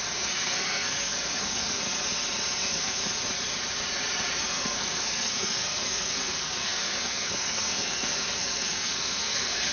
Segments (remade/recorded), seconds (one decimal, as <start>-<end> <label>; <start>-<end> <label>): 0.0-1.8 remade; 1.8-2.6 recorded; 2.6-3.0 remade; 3.0-4.4 recorded; 4.4-9.7 remade